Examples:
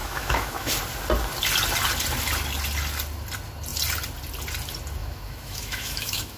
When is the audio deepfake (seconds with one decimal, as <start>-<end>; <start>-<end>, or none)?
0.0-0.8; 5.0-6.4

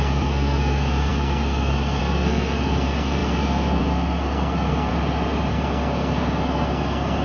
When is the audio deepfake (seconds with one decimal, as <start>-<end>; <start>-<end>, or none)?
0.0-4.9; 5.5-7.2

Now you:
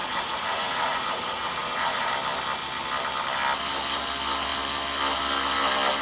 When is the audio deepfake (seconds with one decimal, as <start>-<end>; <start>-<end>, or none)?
0.0-2.1

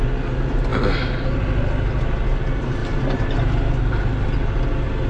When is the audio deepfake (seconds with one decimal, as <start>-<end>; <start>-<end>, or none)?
2.8-3.7

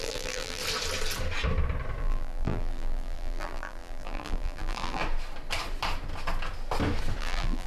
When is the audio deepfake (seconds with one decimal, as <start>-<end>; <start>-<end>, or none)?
0.0-0.6; 2.0-5.0; 7.2-7.7

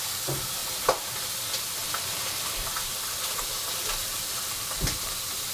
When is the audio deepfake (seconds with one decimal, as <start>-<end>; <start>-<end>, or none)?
0.6-1.3; 1.8-5.1

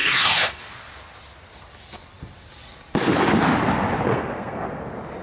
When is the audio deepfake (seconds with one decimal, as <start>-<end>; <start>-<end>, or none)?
0.0-0.6; 4.1-4.6